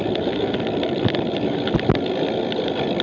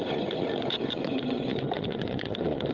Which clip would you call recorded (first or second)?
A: first